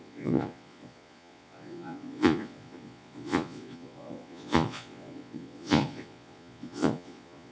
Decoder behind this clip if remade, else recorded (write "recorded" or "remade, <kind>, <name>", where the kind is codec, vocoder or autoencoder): remade, vocoder, Vocos